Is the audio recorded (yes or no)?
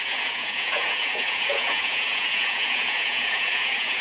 no